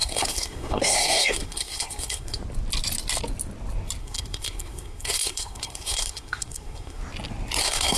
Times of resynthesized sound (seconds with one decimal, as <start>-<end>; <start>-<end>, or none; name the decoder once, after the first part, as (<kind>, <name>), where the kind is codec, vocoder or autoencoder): 0.0-2.4 (codec, SNAC); 4.0-7.0; 7.6-8.0